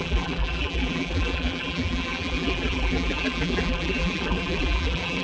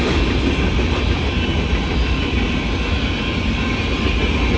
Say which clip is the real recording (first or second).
second